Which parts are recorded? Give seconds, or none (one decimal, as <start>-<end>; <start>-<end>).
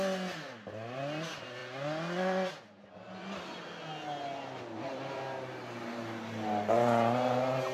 0.0-7.7